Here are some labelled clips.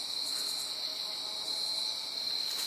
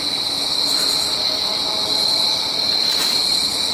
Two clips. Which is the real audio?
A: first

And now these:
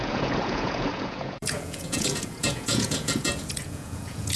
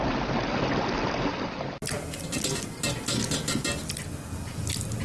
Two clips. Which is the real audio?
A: second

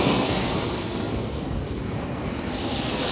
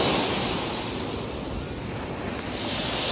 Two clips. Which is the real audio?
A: second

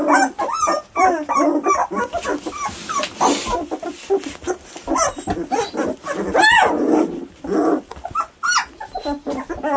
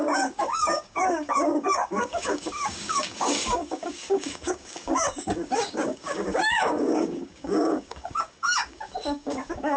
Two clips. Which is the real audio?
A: first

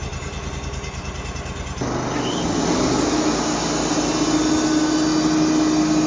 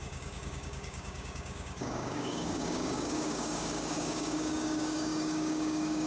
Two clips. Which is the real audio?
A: first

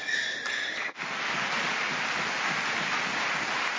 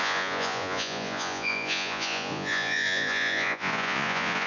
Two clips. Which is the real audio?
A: first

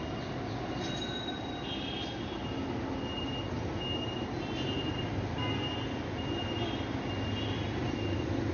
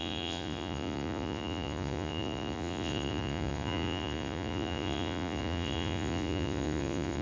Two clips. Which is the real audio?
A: first